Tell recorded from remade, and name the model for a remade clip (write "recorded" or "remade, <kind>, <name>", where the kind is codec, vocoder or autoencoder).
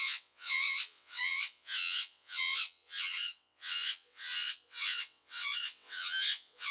remade, vocoder, WaveNeXt